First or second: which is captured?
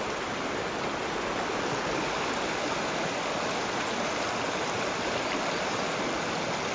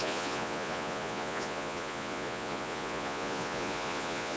first